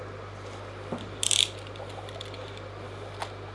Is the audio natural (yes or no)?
yes